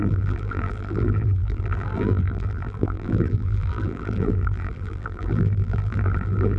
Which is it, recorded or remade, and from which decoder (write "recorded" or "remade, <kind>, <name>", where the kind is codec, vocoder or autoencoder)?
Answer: remade, vocoder, BigVGAN v2